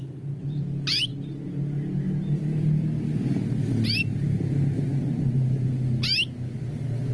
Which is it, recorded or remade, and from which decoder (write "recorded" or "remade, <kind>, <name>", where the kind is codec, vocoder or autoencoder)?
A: recorded